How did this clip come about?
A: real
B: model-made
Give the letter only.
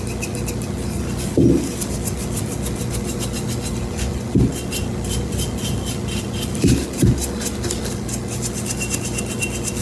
A